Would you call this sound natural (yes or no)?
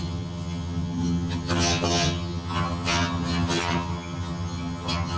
no